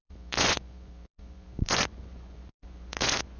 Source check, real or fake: fake